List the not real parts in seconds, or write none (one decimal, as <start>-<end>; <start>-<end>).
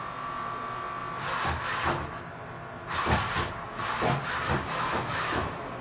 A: 4.9-5.8